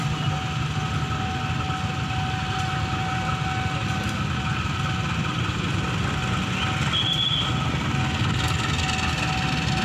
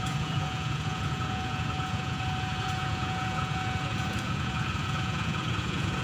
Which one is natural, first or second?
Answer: first